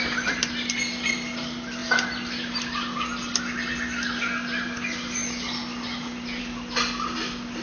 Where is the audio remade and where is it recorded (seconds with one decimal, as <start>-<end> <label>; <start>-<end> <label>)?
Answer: 0.0-7.6 recorded